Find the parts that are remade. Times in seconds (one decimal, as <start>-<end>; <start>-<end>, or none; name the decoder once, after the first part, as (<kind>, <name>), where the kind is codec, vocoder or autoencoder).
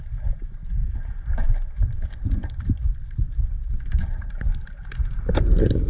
0.8-4.3 (vocoder, BigVGAN v2)